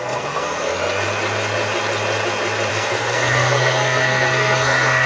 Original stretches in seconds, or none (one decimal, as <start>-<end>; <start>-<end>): 0.7-2.7